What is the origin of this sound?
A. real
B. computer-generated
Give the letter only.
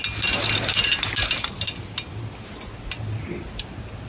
A